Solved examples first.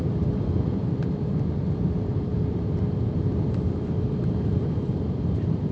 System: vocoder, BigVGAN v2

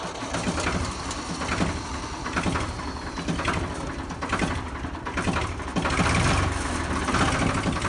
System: none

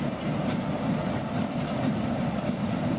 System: vocoder, BigVGAN v2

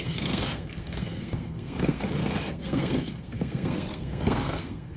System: codec, SNAC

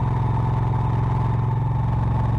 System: none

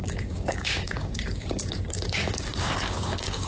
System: codec, DAC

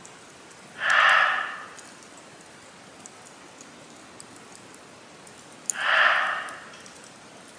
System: none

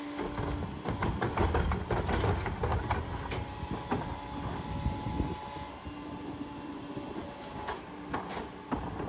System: none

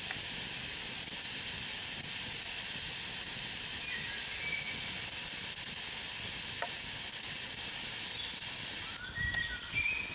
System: none